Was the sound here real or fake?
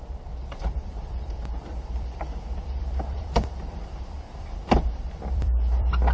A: fake